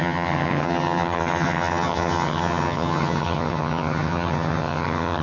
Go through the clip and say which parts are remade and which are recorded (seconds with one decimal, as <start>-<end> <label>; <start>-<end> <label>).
0.0-5.2 remade